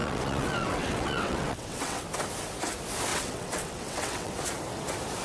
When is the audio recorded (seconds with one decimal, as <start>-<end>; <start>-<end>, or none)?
2.0-3.1; 4.3-5.2